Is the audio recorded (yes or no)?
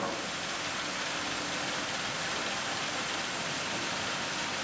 yes